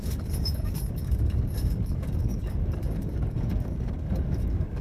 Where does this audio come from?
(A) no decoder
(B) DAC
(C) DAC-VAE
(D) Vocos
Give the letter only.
B